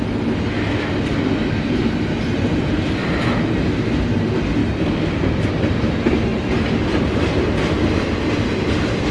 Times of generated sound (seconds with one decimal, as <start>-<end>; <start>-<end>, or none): none